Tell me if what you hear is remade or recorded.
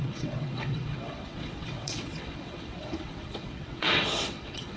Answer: remade